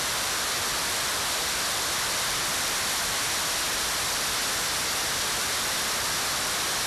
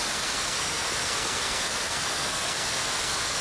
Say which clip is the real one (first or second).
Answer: first